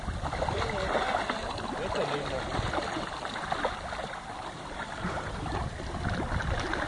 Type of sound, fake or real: real